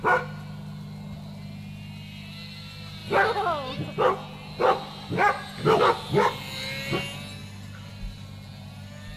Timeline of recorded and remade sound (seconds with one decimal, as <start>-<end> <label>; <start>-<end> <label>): 0.0-9.2 recorded